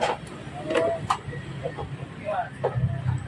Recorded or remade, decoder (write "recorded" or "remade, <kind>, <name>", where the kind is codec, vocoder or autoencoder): recorded